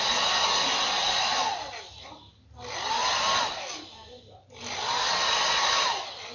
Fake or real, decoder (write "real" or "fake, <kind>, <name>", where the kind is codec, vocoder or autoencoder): real